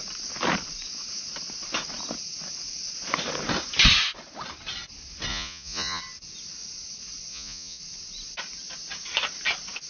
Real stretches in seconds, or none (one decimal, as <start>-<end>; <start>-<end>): 0.0-5.3; 6.0-7.3; 7.8-9.9